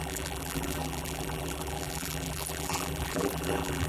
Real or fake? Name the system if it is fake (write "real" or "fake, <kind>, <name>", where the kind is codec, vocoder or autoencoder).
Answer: fake, vocoder, BigVGAN v2